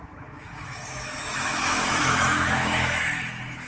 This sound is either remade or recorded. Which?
remade